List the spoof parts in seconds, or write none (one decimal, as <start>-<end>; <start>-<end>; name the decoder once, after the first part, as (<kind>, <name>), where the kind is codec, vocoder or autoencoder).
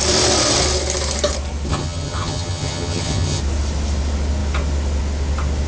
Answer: 1.7-3.4 (vocoder, HiFi-GAN)